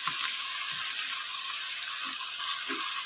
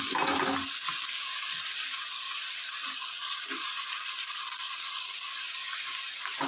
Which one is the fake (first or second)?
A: second